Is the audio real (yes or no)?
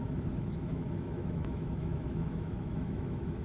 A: no